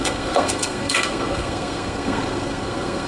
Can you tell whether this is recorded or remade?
remade